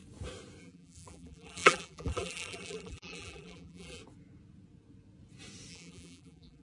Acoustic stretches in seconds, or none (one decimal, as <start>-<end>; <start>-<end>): 0.0-0.6; 4.0-5.7